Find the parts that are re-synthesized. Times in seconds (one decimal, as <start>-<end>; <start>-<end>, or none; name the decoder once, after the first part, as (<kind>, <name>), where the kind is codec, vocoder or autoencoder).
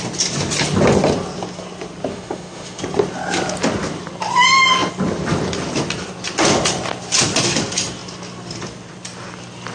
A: 2.1-2.8 (autoencoder, DAC-VAE)